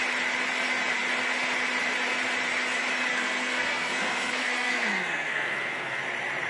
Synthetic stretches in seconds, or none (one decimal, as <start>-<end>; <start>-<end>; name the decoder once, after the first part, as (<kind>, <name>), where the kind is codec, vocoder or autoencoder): 3.1-6.0 (codec, SNAC)